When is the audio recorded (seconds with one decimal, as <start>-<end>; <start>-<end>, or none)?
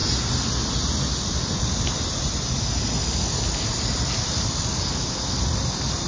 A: 0.0-6.1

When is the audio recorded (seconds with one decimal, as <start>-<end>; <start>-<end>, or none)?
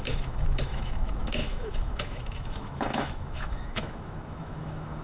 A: none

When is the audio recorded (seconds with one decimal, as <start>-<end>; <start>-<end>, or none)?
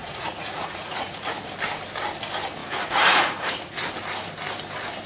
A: 1.5-2.6; 3.9-5.1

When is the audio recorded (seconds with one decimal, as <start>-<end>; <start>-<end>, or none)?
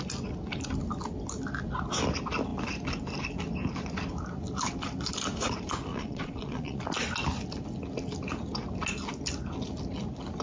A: 0.0-5.9; 6.8-10.4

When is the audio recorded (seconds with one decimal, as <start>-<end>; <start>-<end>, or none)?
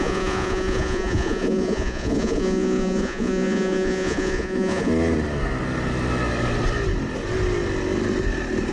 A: 4.9-8.7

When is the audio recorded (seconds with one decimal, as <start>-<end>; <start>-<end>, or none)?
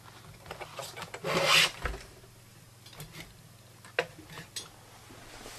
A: 0.0-5.6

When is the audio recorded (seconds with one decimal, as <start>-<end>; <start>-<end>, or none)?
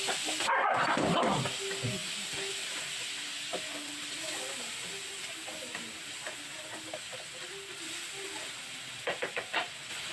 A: 0.0-10.1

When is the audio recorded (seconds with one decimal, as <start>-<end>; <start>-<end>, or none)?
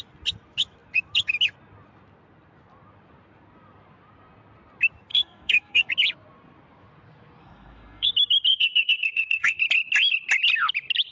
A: 0.0-5.1; 5.9-7.4; 8.1-8.5; 9.6-11.1